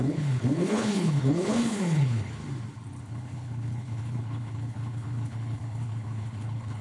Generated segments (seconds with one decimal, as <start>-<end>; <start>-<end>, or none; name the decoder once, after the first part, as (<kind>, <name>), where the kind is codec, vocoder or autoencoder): 0.0-2.4 (codec, HILCodec); 3.0-6.8